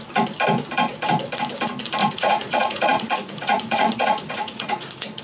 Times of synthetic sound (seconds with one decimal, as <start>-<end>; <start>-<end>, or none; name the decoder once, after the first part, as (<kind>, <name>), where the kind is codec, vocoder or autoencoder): 2.0-5.2 (vocoder, Vocos)